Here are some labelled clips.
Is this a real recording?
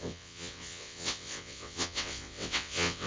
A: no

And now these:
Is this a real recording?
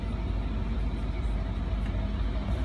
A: yes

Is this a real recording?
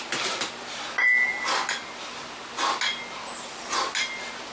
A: yes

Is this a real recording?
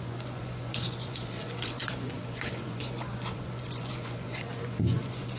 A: no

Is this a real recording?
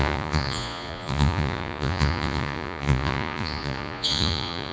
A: no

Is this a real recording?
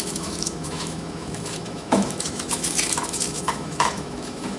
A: no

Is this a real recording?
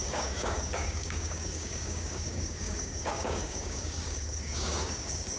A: no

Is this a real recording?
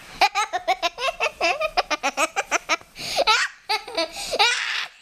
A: no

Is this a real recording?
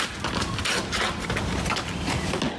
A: yes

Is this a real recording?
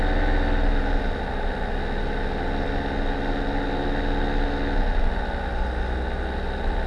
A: yes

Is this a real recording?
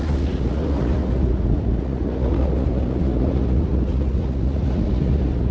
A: no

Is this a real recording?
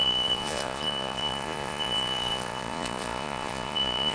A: no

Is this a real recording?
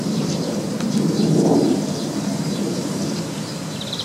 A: no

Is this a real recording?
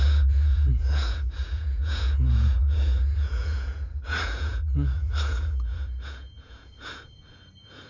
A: no